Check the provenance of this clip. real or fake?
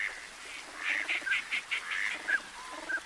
real